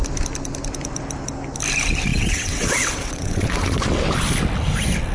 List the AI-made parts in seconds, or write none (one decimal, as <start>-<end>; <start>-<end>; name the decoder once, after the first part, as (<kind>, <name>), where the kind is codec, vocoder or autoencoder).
2.1-3.8 (vocoder, WaveNeXt)